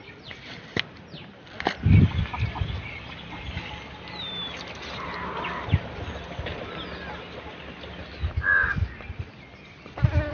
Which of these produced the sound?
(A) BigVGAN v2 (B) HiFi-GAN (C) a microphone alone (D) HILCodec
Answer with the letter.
C